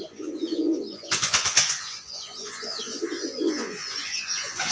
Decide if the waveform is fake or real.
fake